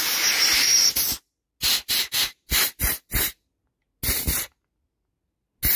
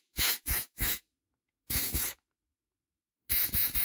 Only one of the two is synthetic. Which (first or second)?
second